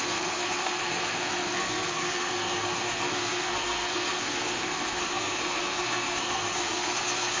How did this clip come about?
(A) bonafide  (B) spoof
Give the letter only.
B